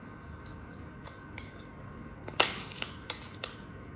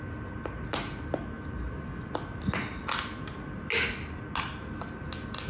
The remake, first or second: first